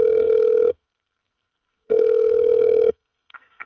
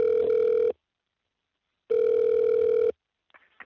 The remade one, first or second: first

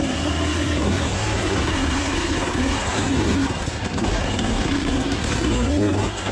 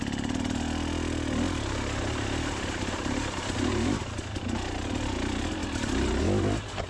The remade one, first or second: first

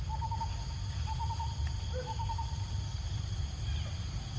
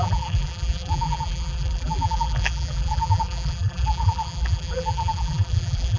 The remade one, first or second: second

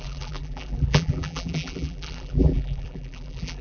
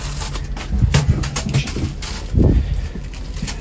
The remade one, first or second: first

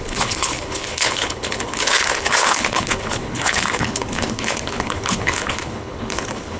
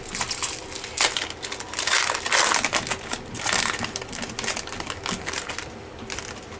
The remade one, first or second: first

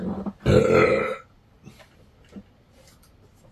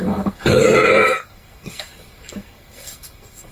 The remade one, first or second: second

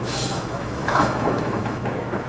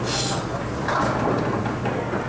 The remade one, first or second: first